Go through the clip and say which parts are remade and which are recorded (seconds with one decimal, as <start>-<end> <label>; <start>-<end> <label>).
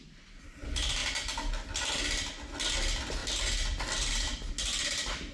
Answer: 0.0-5.3 recorded